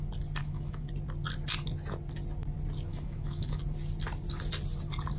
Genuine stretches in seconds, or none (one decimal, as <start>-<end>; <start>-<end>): 0.0-0.4; 0.9-2.9; 3.6-5.2